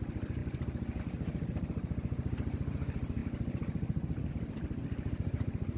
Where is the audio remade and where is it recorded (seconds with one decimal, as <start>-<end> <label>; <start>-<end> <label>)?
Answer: 0.0-0.4 remade; 0.4-1.0 recorded; 1.0-5.8 remade